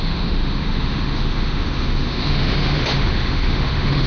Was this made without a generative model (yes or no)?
no